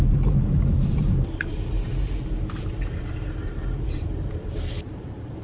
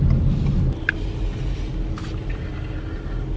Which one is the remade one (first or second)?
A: first